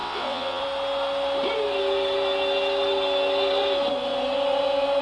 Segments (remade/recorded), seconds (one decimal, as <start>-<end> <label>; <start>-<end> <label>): 0.0-0.6 remade; 0.6-5.0 recorded